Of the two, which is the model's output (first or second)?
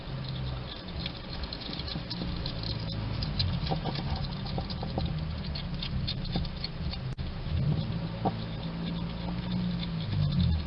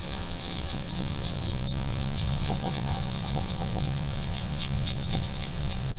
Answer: second